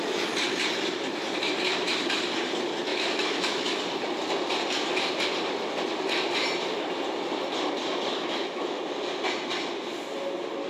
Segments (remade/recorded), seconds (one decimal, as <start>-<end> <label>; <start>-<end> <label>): 0.0-2.9 recorded; 2.9-3.8 remade; 3.8-8.1 recorded; 8.1-8.8 remade; 8.8-10.7 recorded